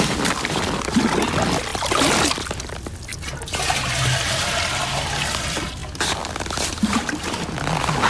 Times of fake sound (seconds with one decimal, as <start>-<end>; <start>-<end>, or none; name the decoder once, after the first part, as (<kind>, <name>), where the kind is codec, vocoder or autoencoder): 5.8-7.5 (vocoder, BigVGAN v2)